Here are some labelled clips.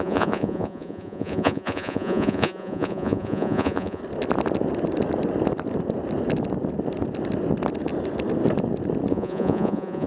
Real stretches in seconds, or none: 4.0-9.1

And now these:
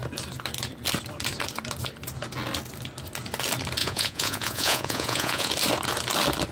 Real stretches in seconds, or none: 0.0-3.8; 5.5-6.5